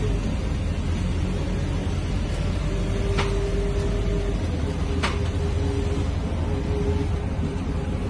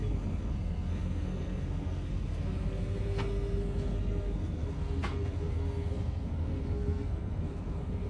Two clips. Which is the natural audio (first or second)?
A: first